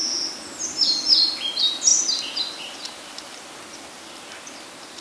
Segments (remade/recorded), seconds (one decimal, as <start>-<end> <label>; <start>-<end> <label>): 0.0-5.0 recorded